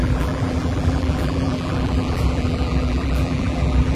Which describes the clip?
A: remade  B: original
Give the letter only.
A